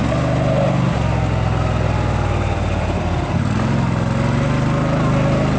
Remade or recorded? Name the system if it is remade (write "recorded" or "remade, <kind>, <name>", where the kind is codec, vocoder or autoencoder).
recorded